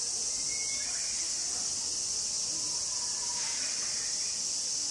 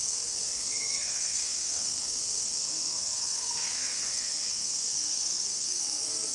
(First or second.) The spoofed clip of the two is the second